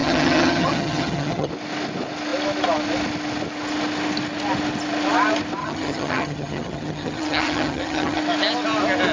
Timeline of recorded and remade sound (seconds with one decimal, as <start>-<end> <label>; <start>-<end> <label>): 0.0-1.5 remade; 1.5-5.6 recorded; 5.6-8.2 remade; 8.2-9.1 recorded